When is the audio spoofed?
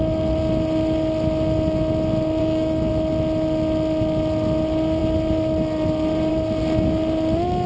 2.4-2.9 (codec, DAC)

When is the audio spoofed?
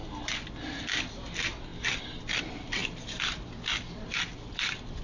0.0-1.7 (vocoder, BigVGAN v2); 2.4-2.8; 3.9-5.0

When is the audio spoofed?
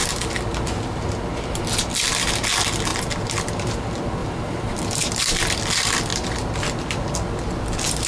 4.2-4.8 (vocoder, BigVGAN v2)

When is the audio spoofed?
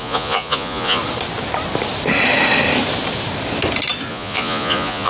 0.0-1.0 (vocoder, Vocos); 4.1-5.1